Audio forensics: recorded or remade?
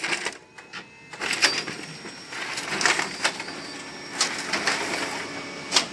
recorded